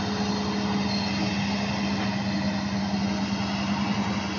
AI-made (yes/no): no